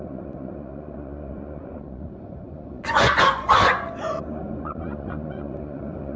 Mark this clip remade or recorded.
remade